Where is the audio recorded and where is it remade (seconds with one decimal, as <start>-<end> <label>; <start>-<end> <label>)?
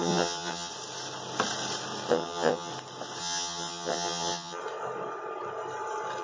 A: 0.0-0.7 remade; 0.7-2.1 recorded; 2.1-2.7 remade; 2.7-3.2 recorded; 3.2-4.6 remade; 4.6-6.2 recorded